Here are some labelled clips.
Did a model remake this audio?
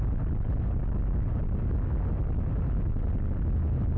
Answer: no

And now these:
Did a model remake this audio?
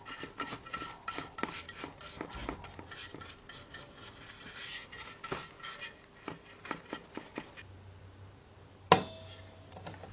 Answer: no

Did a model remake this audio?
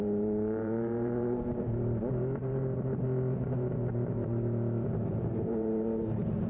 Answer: yes